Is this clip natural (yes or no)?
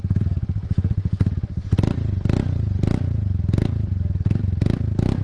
yes